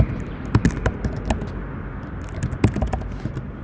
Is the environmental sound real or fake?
real